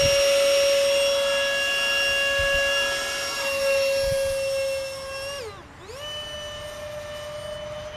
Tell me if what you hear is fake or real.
real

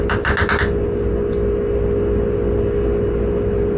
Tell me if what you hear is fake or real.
real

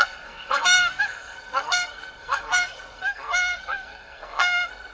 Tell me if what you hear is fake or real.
fake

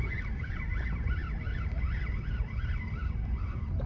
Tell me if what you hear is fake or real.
real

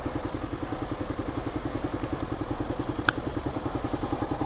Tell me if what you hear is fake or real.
real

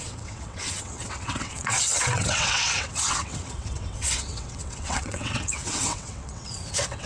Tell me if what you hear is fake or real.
fake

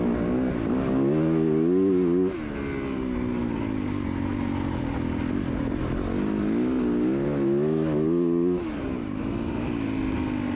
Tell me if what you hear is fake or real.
real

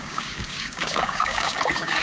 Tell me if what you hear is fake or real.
fake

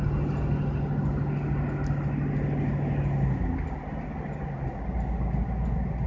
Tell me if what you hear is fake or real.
real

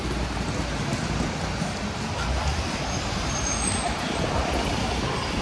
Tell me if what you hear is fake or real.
real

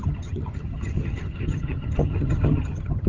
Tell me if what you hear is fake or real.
fake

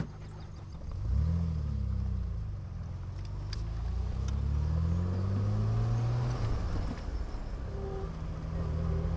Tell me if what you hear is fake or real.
real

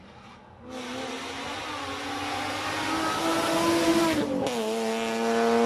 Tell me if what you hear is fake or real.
real